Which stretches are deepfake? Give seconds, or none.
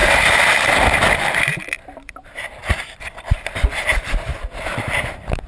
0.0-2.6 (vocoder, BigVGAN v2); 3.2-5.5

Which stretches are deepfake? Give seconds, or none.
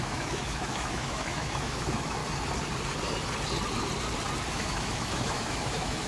0.0-2.2 (autoencoder, DAC-VAE); 4.5-6.1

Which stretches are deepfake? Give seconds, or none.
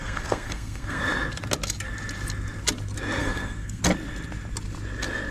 0.0-1.0 (codec, SNAC); 3.2-3.8